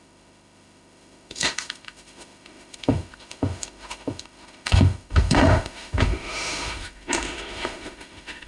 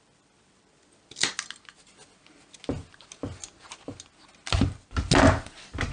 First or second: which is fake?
first